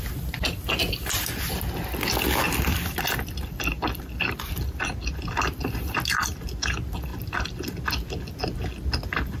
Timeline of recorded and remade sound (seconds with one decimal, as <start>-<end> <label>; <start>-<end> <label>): 0.0-9.4 recorded